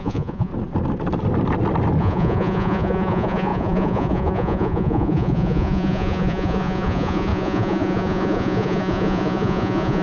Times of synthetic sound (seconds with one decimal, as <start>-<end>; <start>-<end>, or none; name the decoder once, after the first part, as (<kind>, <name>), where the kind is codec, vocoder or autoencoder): 0.0-0.5 (vocoder, Vocos); 2.0-10.0